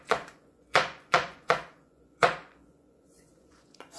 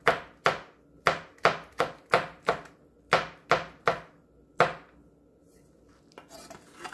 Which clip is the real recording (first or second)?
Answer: second